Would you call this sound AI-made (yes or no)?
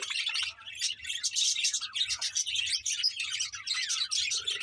no